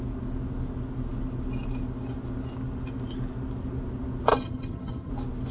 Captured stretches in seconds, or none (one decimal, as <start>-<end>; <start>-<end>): 0.0-4.3; 5.1-5.5